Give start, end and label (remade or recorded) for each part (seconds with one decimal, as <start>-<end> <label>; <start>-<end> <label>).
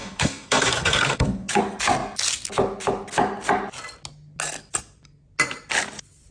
0.0-1.6 remade; 1.6-6.3 recorded